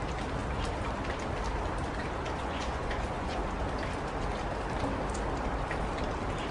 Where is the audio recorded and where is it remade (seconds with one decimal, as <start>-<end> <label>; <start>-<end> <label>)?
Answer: 0.0-2.4 recorded; 2.4-3.4 remade; 3.4-6.5 recorded